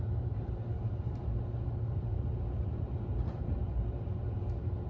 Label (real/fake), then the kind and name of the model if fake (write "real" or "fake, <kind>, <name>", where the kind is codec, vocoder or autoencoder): fake, vocoder, BigVGAN v2